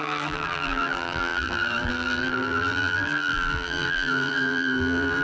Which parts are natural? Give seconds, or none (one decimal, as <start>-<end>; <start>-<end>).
none